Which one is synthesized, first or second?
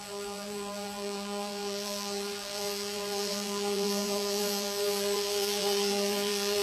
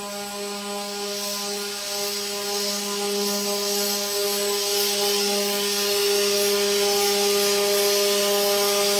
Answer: first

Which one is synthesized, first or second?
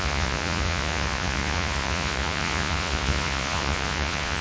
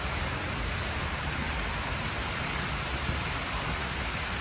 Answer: first